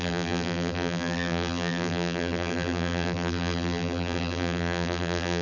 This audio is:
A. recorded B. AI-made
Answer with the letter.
B